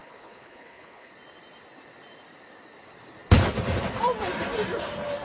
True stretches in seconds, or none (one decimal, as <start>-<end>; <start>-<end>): 1.1-5.2